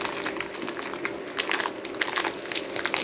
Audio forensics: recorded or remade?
recorded